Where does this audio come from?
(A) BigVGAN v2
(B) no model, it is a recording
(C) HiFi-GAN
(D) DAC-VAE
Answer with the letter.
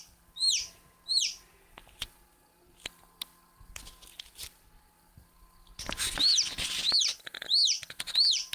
B